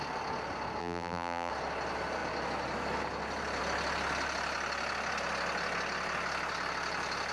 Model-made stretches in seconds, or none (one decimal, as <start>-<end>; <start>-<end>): 0.8-1.5